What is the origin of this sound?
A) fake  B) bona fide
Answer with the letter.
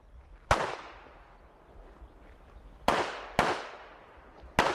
A